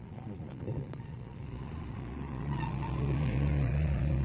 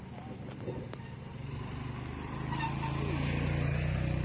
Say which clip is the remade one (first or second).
first